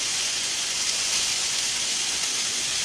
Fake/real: fake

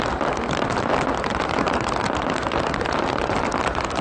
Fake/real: real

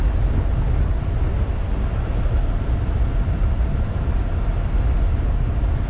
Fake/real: real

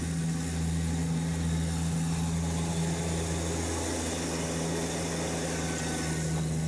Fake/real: real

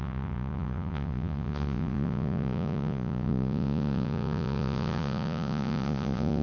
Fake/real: fake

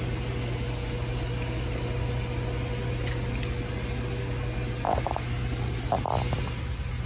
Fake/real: real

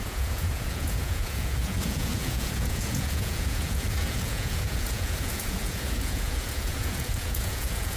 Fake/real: fake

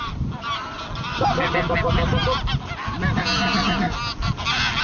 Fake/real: real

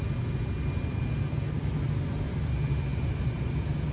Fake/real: real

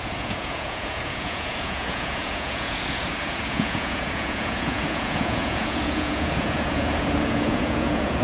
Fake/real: fake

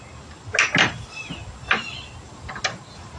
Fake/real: real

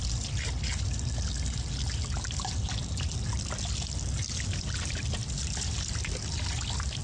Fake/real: real